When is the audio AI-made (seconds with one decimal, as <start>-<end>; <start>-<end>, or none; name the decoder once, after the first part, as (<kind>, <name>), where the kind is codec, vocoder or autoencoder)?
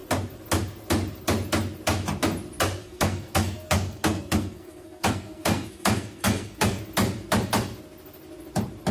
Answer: 2.8-6.8 (codec, SNAC)